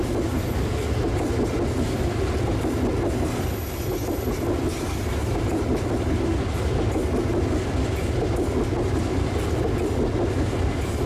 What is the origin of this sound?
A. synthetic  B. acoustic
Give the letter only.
B